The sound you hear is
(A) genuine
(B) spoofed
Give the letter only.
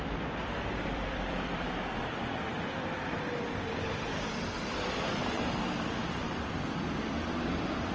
B